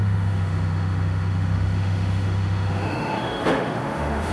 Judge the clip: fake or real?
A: fake